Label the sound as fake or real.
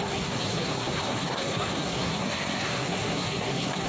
fake